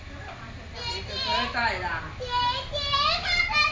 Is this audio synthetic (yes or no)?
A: no